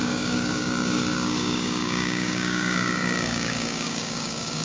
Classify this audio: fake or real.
fake